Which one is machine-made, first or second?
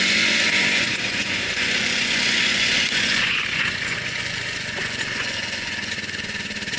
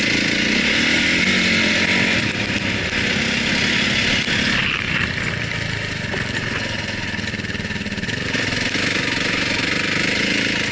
first